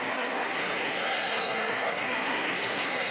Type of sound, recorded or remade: remade